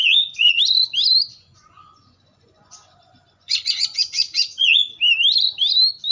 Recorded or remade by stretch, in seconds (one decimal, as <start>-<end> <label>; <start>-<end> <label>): 0.0-0.6 remade; 0.6-1.3 recorded; 1.3-5.0 remade; 5.0-6.1 recorded